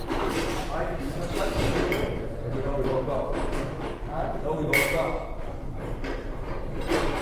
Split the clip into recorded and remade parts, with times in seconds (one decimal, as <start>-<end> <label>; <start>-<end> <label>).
0.0-7.2 remade